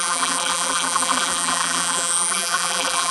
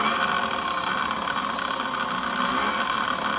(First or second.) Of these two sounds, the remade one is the first